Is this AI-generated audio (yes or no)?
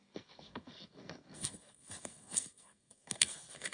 yes